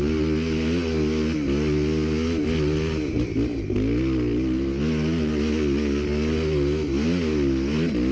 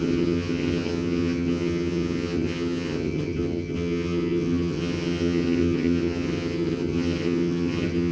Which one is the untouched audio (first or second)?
first